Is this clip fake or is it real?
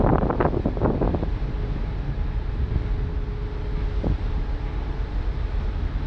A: real